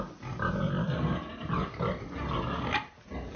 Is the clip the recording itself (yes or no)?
yes